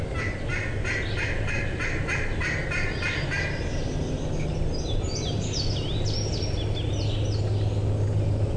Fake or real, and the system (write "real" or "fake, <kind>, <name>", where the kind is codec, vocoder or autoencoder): real